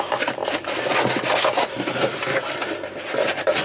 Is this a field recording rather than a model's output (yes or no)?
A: yes